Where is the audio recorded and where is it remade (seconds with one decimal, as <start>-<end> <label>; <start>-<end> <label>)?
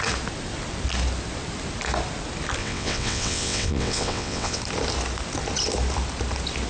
0.0-2.6 recorded; 2.6-4.6 remade; 4.6-6.7 recorded